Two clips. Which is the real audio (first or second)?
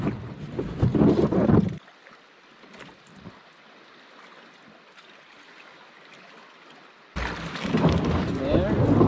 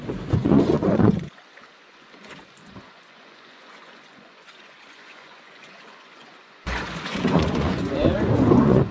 first